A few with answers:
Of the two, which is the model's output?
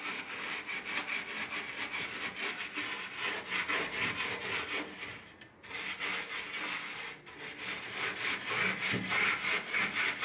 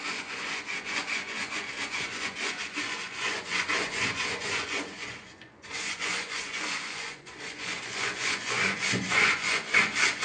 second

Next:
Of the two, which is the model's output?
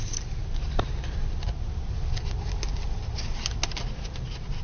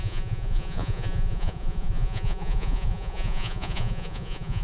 second